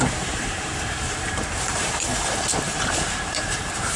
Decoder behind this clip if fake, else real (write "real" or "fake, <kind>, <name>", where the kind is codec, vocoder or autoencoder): fake, vocoder, BigVGAN v2